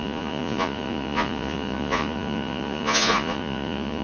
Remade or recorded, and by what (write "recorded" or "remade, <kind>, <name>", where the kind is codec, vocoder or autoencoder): remade, vocoder, Vocos